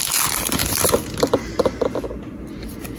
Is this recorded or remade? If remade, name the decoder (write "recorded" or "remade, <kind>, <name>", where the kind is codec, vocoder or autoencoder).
recorded